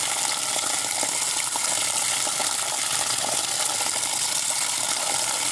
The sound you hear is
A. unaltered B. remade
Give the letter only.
A